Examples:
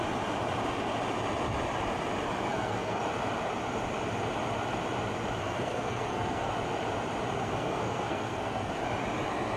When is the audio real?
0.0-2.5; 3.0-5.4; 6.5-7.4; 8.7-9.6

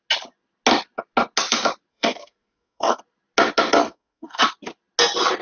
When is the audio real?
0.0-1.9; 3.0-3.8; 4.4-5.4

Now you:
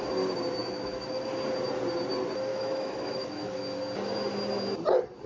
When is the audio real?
0.0-0.6; 1.3-2.5; 3.6-5.3

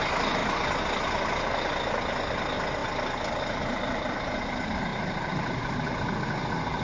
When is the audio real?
0.0-6.8

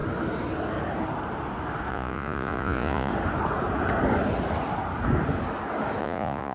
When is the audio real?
0.0-1.9; 3.1-6.0

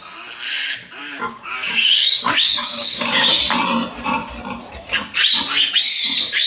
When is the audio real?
0.0-1.0; 3.4-6.5

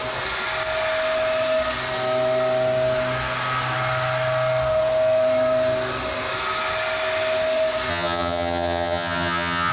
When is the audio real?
0.0-7.9